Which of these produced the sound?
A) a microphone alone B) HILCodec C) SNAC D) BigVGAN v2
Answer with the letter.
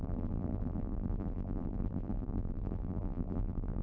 D